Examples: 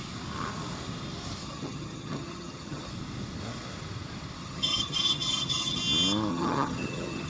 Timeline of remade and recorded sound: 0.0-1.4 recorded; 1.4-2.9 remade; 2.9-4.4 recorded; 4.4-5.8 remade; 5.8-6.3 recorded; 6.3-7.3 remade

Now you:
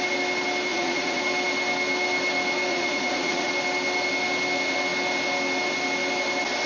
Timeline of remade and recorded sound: 0.0-0.7 recorded; 0.7-1.2 remade; 1.2-2.7 recorded; 2.7-3.5 remade; 3.5-6.7 recorded

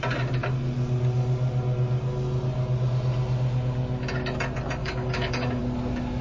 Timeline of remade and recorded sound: 0.0-4.8 recorded; 4.8-5.6 remade; 5.6-6.2 recorded

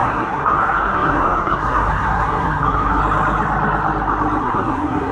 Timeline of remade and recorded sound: 0.0-3.0 remade; 3.0-4.4 recorded; 4.4-5.1 remade

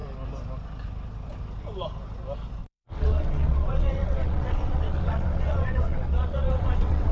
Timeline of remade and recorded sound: 0.0-2.6 recorded; 2.6-7.1 remade